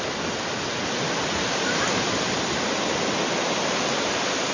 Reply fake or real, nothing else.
real